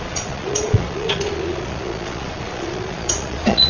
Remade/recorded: remade